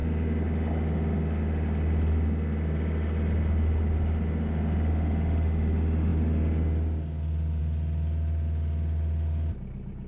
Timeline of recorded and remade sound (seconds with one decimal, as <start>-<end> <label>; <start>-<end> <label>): 0.0-10.1 recorded